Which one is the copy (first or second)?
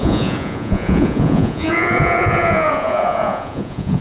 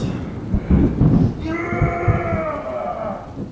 first